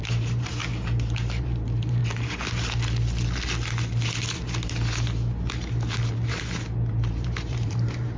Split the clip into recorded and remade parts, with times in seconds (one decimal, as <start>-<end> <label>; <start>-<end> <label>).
0.0-0.6 remade; 0.6-1.4 recorded; 1.4-2.0 remade; 2.0-6.9 recorded; 6.9-8.2 remade